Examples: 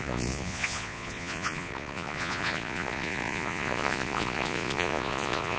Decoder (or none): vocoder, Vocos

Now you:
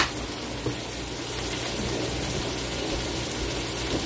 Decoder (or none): none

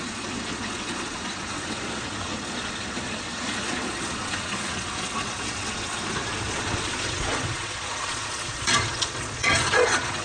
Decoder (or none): vocoder, Vocos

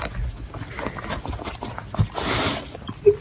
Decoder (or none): none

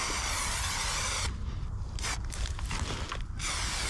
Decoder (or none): none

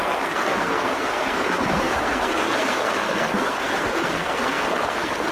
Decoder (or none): codec, SNAC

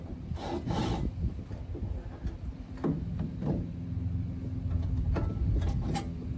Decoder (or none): none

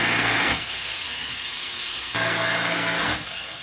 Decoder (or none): codec, SNAC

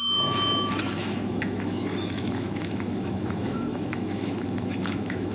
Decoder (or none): autoencoder, DAC-VAE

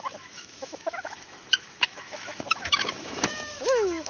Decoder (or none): autoencoder, DAC-VAE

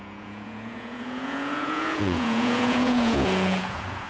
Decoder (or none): vocoder, Vocos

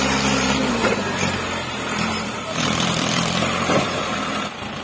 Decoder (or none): vocoder, BigVGAN v2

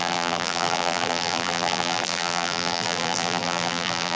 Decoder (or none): vocoder, BigVGAN v2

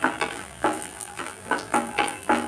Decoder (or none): vocoder, BigVGAN v2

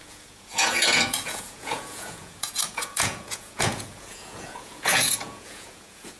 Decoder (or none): vocoder, Vocos